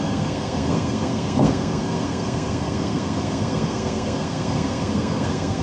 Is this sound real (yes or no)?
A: no